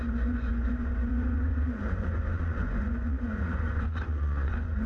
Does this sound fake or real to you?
fake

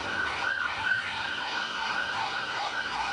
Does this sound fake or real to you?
fake